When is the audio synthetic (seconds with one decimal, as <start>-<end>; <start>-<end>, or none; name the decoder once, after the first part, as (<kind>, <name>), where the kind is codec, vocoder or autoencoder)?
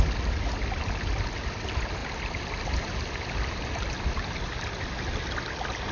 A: none